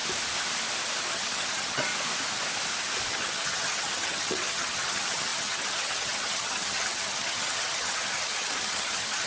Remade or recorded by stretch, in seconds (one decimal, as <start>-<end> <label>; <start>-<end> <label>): 0.0-1.0 recorded; 1.0-1.9 remade; 1.9-3.1 recorded; 3.1-9.3 remade